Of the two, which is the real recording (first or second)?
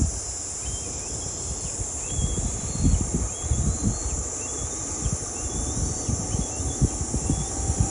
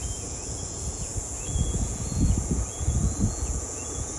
first